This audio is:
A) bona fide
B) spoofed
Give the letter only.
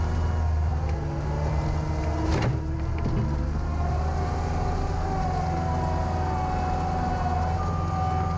A